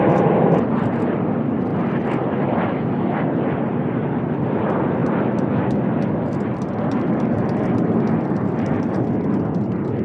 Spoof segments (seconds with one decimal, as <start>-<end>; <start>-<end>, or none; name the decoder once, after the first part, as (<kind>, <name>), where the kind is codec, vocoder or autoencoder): none